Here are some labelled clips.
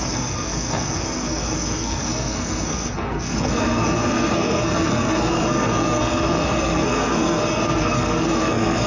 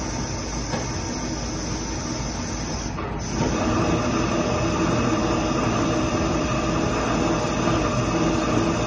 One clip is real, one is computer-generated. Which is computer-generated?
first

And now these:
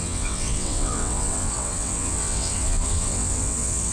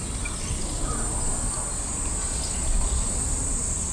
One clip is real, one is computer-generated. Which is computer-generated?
first